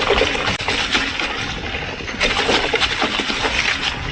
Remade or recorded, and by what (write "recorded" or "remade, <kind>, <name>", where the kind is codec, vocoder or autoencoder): recorded